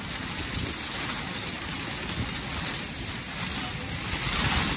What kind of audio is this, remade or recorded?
recorded